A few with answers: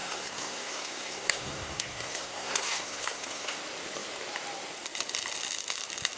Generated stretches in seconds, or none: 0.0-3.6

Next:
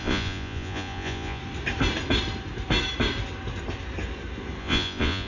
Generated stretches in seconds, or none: 0.0-1.4; 4.6-5.3

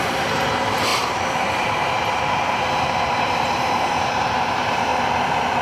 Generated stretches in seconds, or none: 0.0-4.9

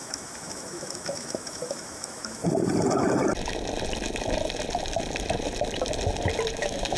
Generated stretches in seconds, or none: 0.0-2.4; 6.6-7.0